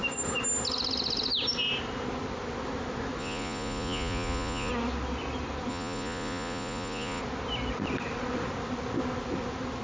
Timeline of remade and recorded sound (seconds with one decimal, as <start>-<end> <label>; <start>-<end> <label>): 0.0-3.2 recorded; 3.2-4.7 remade; 4.7-5.7 recorded; 5.7-7.2 remade; 7.2-9.8 recorded

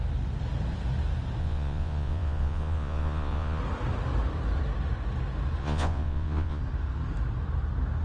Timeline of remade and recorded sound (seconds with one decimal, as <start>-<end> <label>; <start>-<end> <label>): 0.0-1.4 recorded; 1.4-3.6 remade; 3.6-5.6 recorded; 5.6-6.6 remade; 6.6-8.0 recorded

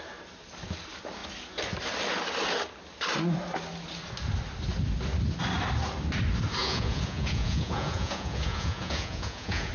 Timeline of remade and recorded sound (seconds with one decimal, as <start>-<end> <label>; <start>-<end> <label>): 0.0-6.6 recorded; 6.6-9.7 remade

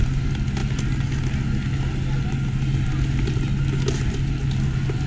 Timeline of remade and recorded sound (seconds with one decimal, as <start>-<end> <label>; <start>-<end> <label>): 0.0-5.1 recorded

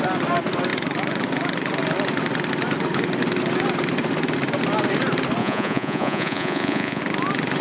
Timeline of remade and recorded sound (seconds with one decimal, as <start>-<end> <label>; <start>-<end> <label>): 0.0-5.4 recorded; 5.4-7.0 remade; 7.0-7.6 recorded